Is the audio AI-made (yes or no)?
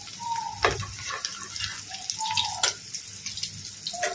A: no